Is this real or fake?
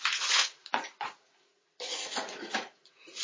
fake